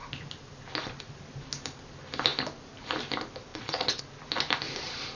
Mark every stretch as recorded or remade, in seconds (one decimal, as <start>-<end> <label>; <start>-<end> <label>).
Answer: 0.0-3.5 recorded; 3.5-4.0 remade; 4.0-5.1 recorded